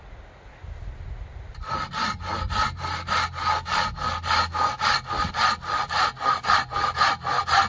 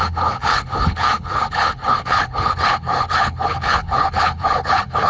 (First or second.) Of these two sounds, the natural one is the first